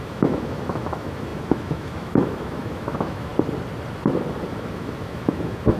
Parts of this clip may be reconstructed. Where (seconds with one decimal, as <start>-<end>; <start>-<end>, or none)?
0.0-3.3; 4.5-5.8